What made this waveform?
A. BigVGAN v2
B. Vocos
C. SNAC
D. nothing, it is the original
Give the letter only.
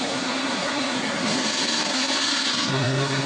C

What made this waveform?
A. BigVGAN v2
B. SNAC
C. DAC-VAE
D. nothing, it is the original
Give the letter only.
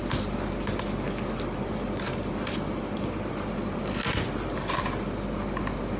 D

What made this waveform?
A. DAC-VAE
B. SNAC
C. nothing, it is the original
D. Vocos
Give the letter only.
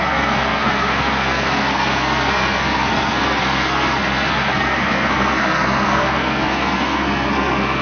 B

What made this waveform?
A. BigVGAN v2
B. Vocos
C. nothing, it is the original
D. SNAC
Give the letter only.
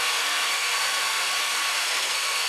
D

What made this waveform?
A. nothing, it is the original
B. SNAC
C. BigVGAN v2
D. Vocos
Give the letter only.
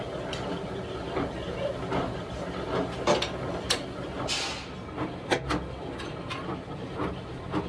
A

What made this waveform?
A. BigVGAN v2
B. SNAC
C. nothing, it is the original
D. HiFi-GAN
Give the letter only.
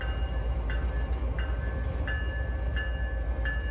C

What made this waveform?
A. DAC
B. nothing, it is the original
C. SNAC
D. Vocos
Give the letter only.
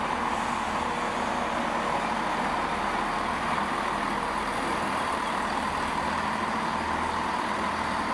B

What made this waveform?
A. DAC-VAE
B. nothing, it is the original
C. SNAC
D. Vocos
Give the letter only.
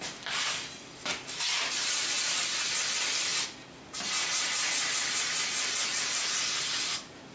B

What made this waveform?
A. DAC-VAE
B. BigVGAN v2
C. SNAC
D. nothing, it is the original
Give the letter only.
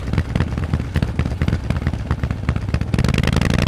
D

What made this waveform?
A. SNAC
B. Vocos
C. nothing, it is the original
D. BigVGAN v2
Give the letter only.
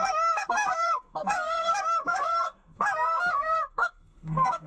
A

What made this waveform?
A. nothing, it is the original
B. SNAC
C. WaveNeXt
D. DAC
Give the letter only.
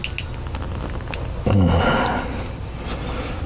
A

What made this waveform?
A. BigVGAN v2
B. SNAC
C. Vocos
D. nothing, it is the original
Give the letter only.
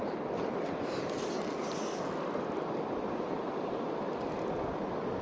D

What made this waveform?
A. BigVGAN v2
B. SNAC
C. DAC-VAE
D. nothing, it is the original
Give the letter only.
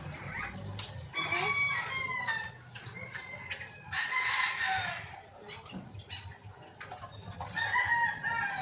D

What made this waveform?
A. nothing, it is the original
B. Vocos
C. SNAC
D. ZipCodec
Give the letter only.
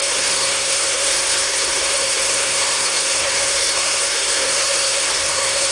C